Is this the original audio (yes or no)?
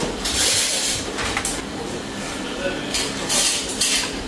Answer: no